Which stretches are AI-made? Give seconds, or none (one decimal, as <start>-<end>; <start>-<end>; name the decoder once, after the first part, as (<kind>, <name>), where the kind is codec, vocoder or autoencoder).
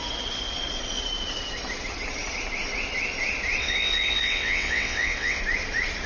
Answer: 3.6-5.4 (vocoder, WaveNeXt)